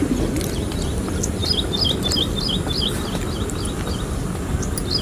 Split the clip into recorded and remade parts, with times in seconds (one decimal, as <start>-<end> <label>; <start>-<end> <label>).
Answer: 0.0-5.0 remade